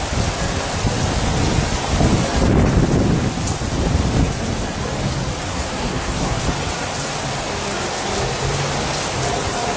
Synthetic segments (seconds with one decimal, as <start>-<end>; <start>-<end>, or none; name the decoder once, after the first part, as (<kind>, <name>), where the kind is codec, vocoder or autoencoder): 5.5-6.4 (codec, SNAC)